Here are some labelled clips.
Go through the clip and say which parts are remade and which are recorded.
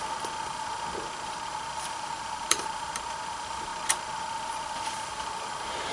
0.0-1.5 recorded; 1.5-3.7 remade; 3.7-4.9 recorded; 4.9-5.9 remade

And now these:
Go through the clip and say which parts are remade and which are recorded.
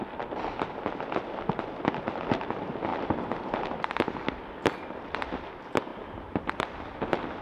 0.0-2.9 recorded; 2.9-5.5 remade; 5.5-5.9 recorded; 5.9-6.6 remade; 6.6-7.4 recorded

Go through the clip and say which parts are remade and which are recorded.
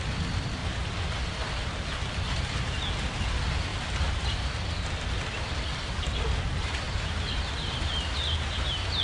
0.0-0.6 recorded; 0.6-1.6 remade; 1.6-3.7 recorded; 3.7-8.6 remade; 8.6-9.0 recorded